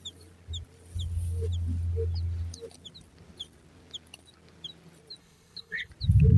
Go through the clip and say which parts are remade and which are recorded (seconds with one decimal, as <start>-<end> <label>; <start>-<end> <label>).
0.0-5.2 recorded; 5.2-5.9 remade; 5.9-6.4 recorded